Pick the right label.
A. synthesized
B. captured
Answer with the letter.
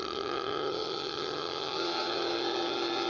A